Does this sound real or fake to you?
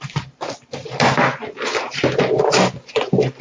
real